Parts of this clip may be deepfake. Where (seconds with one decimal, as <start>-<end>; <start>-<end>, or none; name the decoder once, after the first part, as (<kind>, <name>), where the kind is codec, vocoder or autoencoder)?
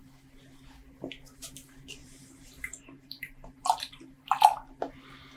2.0-4.4 (vocoder, BigVGAN v2)